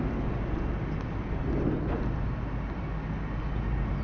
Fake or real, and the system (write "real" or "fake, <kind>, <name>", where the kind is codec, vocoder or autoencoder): real